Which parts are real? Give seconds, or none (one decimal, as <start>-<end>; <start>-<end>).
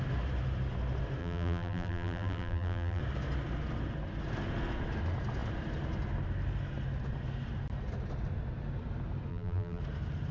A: 0.0-1.2; 3.0-9.3; 9.8-10.3